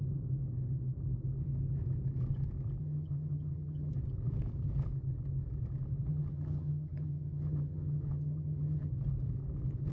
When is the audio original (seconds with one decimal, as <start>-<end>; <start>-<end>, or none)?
0.0-2.8; 3.9-6.1; 8.9-9.9